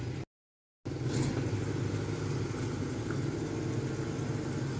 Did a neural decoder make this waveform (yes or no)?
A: no